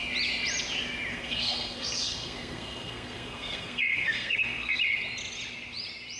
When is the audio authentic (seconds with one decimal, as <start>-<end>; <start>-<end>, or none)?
0.0-1.1; 4.8-6.2